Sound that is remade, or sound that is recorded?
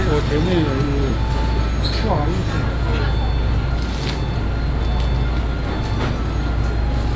recorded